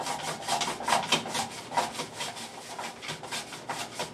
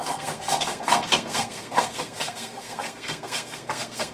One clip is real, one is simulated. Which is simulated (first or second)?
second